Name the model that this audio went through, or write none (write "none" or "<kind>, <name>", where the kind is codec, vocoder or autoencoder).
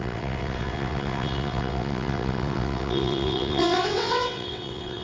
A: vocoder, WaveNeXt